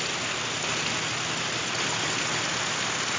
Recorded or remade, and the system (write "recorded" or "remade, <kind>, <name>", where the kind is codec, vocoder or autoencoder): recorded